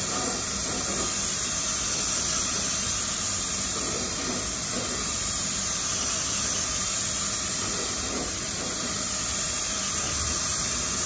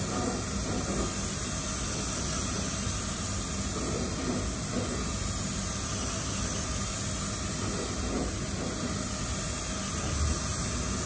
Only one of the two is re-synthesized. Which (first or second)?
first